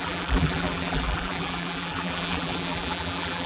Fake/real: fake